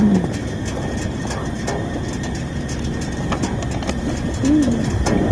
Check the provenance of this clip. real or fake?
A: real